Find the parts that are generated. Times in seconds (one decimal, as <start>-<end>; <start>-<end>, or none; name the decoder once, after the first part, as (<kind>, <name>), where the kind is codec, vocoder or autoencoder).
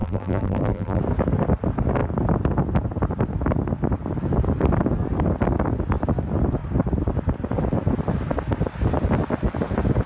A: 0.0-1.0 (vocoder, BigVGAN v2)